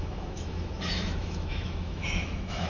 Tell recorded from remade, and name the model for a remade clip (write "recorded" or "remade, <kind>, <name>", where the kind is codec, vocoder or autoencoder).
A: remade, autoencoder, DAC-VAE